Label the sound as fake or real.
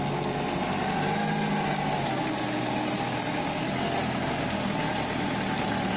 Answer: real